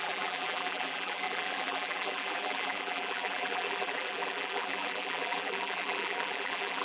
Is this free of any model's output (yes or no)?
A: no